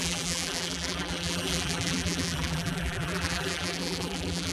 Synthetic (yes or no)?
yes